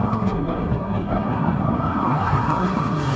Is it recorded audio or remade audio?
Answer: remade